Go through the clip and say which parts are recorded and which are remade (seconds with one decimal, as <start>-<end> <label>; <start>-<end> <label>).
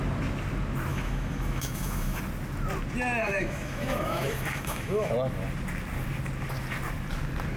0.0-0.9 recorded; 0.9-2.2 remade; 2.2-3.2 recorded; 3.2-5.1 remade; 5.1-7.6 recorded